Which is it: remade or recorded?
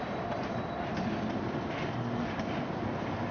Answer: recorded